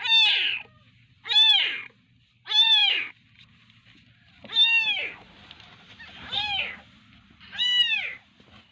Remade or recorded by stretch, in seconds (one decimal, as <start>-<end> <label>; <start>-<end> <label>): 0.0-8.7 recorded